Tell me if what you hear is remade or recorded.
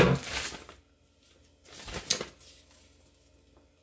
recorded